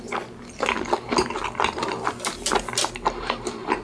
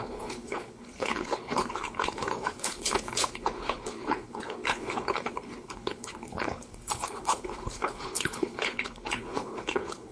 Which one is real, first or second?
first